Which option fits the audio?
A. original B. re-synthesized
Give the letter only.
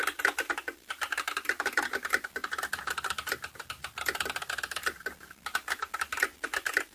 A